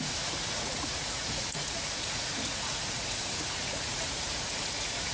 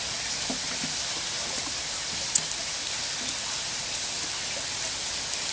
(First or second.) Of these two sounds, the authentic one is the second